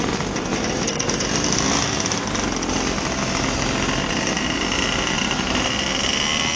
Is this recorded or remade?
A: recorded